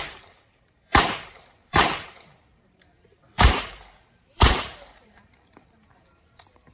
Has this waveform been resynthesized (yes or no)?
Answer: yes